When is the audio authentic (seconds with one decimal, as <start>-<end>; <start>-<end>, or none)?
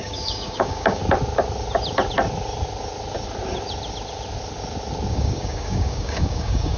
1.0-5.1